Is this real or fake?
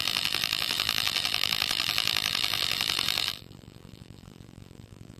fake